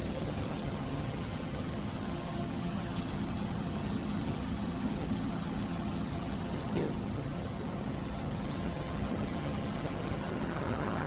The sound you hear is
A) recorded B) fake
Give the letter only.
B